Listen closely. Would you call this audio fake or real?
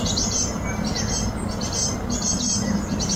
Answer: real